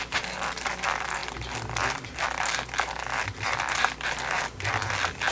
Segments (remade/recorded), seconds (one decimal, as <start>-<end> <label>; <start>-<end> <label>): 0.0-5.3 recorded